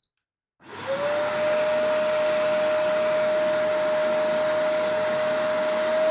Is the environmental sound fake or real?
real